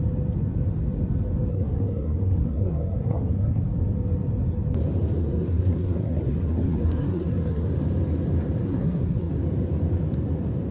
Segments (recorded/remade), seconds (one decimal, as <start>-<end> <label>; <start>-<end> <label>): 0.0-1.5 recorded; 1.5-3.6 remade; 3.6-5.2 recorded; 5.2-7.7 remade; 7.7-8.6 recorded; 8.6-9.3 remade; 9.3-10.7 recorded